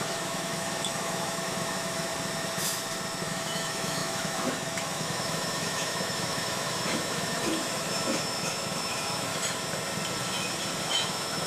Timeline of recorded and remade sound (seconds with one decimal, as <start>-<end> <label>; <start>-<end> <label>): 0.0-2.1 remade; 2.1-3.2 recorded; 3.2-9.3 remade; 9.3-10.8 recorded; 10.8-11.5 remade